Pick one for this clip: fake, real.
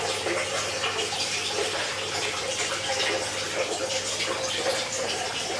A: fake